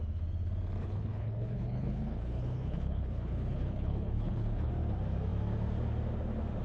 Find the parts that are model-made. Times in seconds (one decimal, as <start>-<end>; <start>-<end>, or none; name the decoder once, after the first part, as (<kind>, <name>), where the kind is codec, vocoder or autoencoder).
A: 0.8-4.7 (codec, HILCodec)